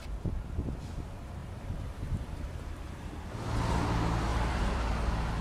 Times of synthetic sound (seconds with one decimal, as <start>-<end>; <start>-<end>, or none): 1.4-3.1; 4.3-5.0